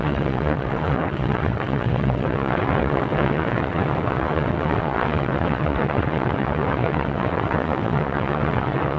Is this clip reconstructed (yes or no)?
yes